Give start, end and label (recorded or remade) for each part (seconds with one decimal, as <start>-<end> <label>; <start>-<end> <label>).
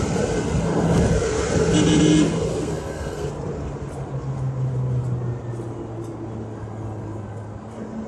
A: 0.0-2.5 recorded; 2.5-3.3 remade; 3.3-8.1 recorded